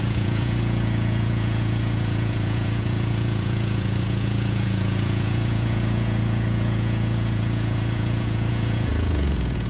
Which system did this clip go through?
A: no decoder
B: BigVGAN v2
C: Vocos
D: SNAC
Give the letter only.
C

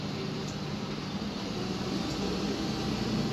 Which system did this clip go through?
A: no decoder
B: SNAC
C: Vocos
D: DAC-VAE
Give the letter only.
A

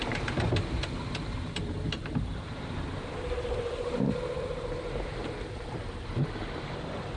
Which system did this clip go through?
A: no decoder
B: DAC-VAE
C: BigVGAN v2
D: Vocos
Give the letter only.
C